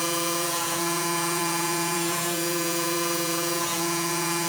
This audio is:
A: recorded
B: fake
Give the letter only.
B